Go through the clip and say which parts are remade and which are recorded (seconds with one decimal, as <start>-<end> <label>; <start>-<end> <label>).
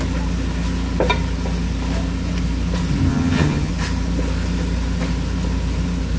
0.0-3.1 recorded; 3.1-3.7 remade; 3.7-6.2 recorded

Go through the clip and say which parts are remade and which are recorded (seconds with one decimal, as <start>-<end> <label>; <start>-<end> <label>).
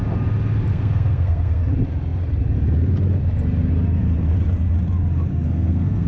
0.0-0.7 recorded; 0.7-1.6 remade; 1.6-5.3 recorded; 5.3-6.1 remade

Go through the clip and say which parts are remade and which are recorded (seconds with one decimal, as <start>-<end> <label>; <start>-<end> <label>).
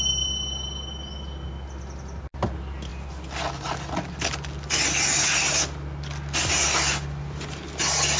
0.0-8.2 recorded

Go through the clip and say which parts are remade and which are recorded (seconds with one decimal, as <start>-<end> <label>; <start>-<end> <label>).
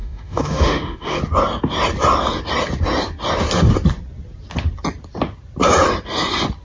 0.0-1.2 remade; 1.2-6.6 recorded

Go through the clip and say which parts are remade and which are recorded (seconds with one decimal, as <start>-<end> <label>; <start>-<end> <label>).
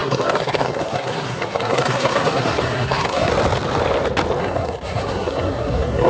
0.0-3.3 remade; 3.3-4.4 recorded; 4.4-6.1 remade